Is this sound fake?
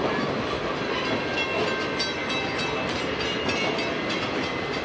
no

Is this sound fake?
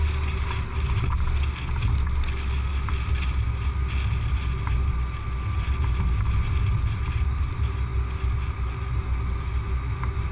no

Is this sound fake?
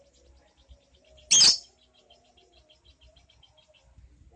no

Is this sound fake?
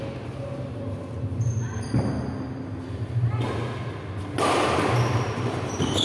no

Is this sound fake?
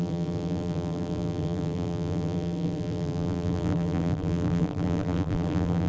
yes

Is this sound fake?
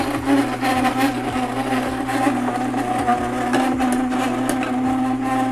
no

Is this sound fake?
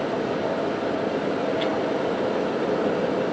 yes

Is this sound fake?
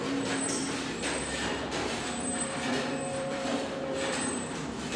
yes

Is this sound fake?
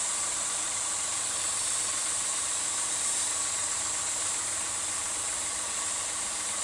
yes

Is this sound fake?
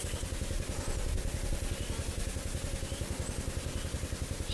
no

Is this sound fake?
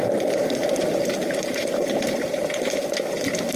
no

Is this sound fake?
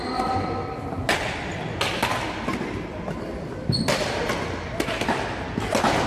no